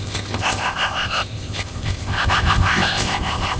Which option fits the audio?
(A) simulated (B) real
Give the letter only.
A